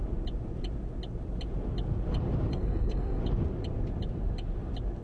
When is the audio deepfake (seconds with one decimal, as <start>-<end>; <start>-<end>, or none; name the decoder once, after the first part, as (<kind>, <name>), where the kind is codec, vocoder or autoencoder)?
2.5-3.2 (codec, SNAC)